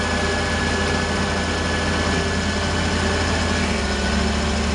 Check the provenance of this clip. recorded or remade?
recorded